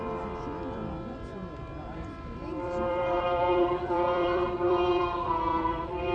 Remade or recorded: remade